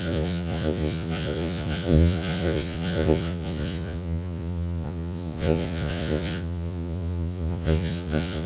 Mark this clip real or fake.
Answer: fake